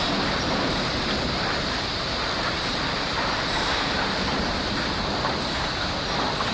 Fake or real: fake